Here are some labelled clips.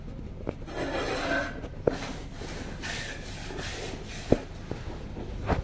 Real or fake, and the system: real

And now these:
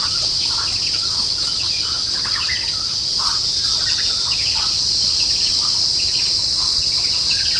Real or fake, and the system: real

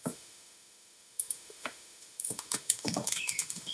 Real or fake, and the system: fake, autoencoder, DAC-VAE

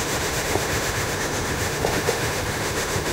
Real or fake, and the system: fake, autoencoder, DAC-VAE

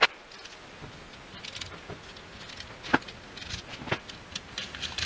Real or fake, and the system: real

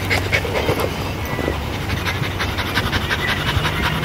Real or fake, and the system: real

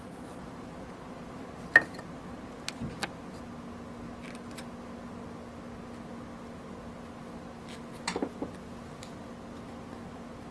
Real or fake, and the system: real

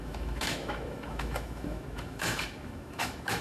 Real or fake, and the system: fake, autoencoder, DAC-VAE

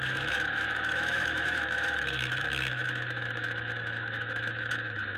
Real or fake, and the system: fake, autoencoder, DAC-VAE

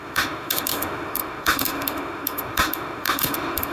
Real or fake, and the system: fake, autoencoder, DAC-VAE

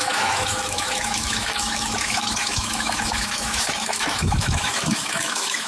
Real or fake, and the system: fake, autoencoder, DAC-VAE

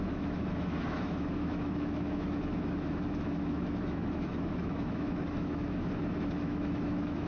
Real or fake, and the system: fake, autoencoder, DAC-VAE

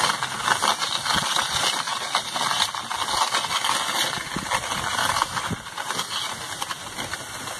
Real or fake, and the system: real